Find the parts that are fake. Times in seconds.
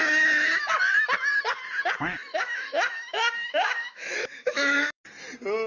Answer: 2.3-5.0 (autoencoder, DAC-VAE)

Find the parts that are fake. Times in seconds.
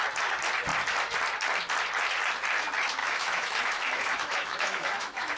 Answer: 3.0-5.4 (autoencoder, DAC-VAE)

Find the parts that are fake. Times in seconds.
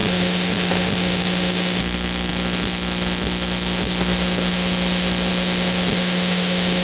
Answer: 0.0-6.8 (autoencoder, DAC-VAE)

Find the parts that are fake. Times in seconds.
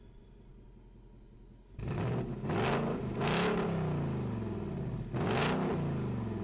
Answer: none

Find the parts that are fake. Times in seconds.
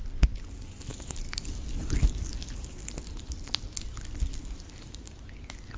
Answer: none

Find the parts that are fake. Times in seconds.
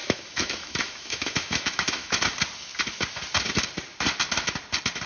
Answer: 0.0-2.2 (autoencoder, DAC-VAE)